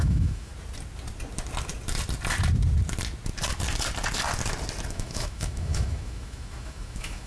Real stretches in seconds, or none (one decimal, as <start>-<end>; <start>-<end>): 0.5-4.9